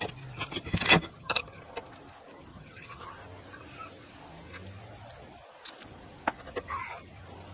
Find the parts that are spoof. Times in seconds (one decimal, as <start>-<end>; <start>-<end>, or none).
1.1-1.6; 2.5-3.0